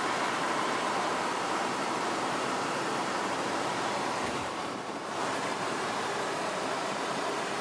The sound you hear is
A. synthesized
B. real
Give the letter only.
A